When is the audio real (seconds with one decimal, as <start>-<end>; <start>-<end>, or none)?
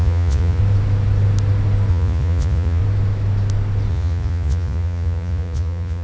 0.6-1.9; 2.8-3.9